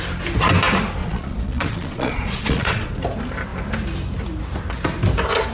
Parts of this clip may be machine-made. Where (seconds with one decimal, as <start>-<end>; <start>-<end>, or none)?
1.0-3.0